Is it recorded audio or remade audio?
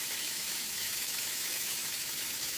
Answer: remade